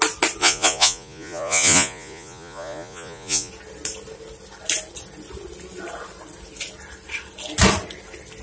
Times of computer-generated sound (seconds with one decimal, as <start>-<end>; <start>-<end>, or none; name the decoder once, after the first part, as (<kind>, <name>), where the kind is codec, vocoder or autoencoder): 0.4-3.5 (vocoder, Vocos)